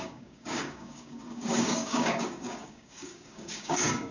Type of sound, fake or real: fake